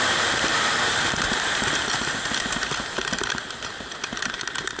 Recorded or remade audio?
remade